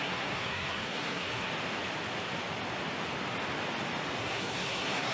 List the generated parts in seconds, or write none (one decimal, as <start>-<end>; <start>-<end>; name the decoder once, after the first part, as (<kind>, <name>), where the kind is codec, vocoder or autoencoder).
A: 0.0-1.5 (codec, SNAC); 4.2-5.1

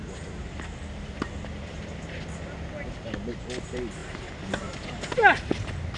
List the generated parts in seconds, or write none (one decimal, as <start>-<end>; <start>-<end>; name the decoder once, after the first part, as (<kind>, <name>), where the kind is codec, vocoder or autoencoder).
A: none

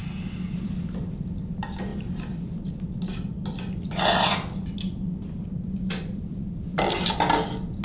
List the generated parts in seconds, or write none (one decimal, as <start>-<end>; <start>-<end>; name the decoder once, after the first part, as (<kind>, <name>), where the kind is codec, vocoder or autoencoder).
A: none

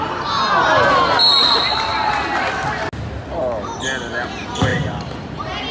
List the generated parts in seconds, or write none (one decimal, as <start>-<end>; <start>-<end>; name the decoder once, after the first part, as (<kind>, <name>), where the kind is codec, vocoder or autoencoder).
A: 4.7-5.3 (vocoder, BigVGAN v2)